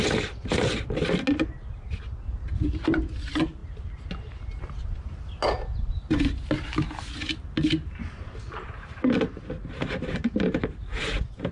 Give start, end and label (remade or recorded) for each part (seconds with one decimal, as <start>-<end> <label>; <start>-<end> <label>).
0.0-11.5 recorded

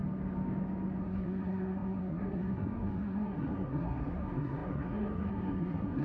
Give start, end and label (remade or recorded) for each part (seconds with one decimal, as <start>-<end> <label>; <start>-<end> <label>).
0.0-1.0 recorded; 1.0-6.0 remade

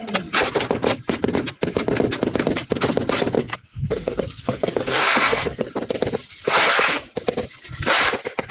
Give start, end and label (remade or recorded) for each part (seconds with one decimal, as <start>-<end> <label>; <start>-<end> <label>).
0.0-3.4 recorded; 3.4-5.7 remade; 5.7-8.5 recorded

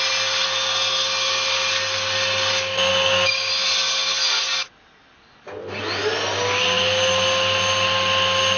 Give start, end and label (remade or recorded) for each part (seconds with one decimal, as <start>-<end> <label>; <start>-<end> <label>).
0.0-2.9 recorded; 2.9-3.5 remade; 3.5-8.6 recorded

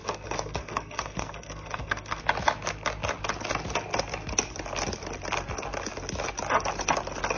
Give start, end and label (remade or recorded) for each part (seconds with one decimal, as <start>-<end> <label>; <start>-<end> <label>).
0.0-2.2 remade; 2.2-7.4 recorded

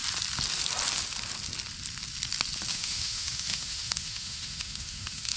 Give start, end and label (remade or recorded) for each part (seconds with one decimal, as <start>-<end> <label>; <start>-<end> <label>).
0.0-2.7 recorded; 2.7-5.4 remade

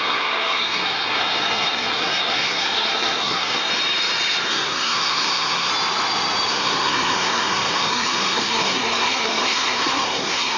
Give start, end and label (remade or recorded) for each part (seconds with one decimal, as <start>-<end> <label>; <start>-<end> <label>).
0.0-3.7 remade; 3.7-4.5 recorded; 4.5-5.7 remade; 5.7-6.5 recorded; 6.5-10.6 remade